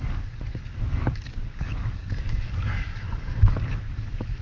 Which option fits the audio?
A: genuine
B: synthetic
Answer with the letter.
B